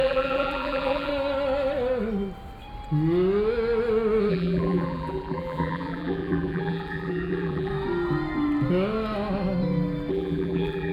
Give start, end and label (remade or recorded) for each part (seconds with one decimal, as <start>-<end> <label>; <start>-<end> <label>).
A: 0.0-1.1 remade; 1.1-4.3 recorded; 4.3-7.7 remade; 7.7-10.1 recorded; 10.1-10.9 remade